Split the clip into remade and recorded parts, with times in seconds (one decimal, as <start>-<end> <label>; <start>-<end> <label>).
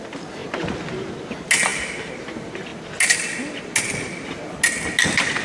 0.0-5.4 recorded